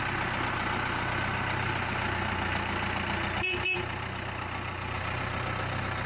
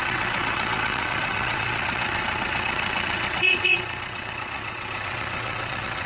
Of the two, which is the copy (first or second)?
second